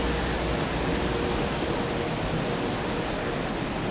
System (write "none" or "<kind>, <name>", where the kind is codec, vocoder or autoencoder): none